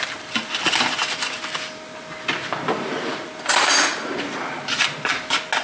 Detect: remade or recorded recorded